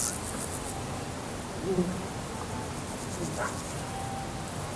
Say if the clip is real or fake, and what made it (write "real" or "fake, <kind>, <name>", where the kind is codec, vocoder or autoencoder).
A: real